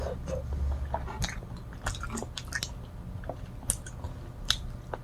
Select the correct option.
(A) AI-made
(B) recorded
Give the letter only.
B